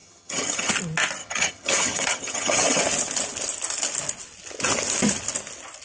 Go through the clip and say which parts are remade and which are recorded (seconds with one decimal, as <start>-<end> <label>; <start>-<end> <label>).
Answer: 0.0-0.7 remade; 0.7-1.2 recorded; 1.2-2.8 remade; 2.8-5.8 recorded